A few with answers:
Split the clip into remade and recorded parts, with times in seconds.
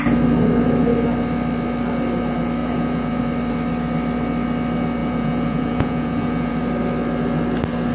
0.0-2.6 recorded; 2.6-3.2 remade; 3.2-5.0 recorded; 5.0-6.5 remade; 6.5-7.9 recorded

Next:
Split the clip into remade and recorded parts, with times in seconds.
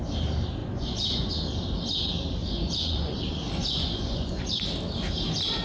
0.0-0.6 recorded; 0.6-1.3 remade; 1.3-2.4 recorded; 2.4-3.2 remade; 3.2-3.6 recorded; 3.6-4.4 remade; 4.4-5.6 recorded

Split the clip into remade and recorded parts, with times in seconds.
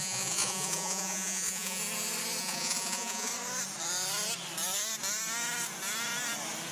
0.0-1.8 remade; 1.8-2.4 recorded; 2.4-3.3 remade; 3.3-6.7 recorded